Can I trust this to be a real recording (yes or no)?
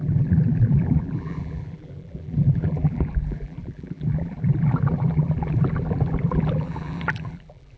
no